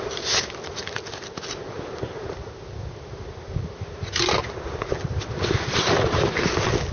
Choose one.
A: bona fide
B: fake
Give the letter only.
A